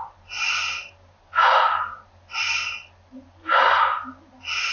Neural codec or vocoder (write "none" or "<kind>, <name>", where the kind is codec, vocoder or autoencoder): none